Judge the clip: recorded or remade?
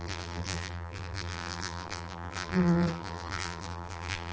remade